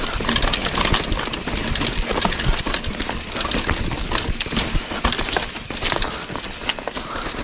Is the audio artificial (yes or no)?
no